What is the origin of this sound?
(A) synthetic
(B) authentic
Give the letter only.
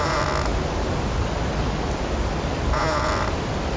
B